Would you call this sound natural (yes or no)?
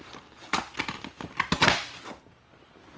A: yes